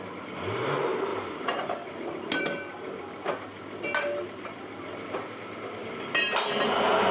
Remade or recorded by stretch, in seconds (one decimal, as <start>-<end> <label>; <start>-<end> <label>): 0.0-7.1 recorded